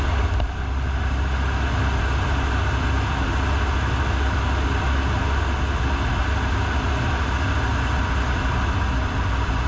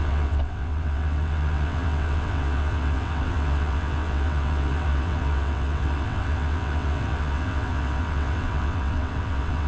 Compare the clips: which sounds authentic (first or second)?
first